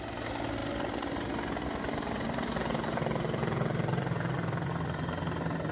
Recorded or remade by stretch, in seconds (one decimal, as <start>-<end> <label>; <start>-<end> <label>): 0.0-5.7 recorded